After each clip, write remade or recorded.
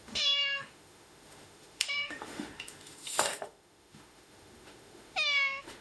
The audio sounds remade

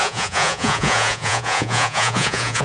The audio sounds remade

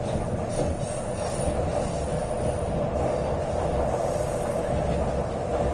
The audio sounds recorded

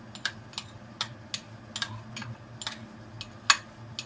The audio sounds recorded